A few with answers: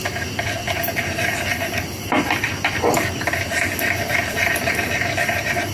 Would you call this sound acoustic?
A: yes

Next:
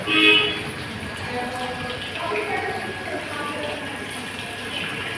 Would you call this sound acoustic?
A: yes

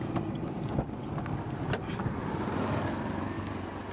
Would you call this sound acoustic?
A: yes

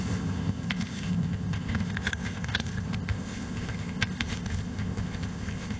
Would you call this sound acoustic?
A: no